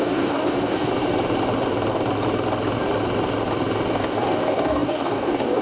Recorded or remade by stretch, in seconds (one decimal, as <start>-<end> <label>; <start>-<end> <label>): 0.0-0.9 remade; 0.9-3.9 recorded; 3.9-5.6 remade